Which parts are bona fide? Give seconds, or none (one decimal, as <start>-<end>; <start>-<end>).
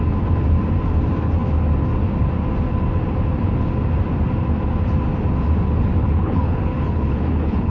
0.0-6.0